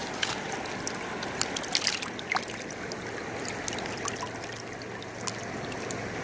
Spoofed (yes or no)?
no